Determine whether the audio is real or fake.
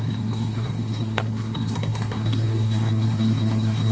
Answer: fake